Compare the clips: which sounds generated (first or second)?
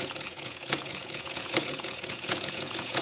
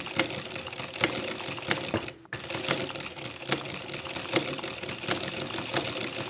first